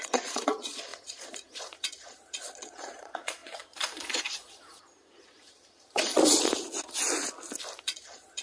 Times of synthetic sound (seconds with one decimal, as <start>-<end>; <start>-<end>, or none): 0.0-6.1; 7.8-8.4